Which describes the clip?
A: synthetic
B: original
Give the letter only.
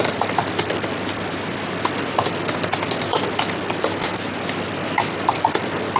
B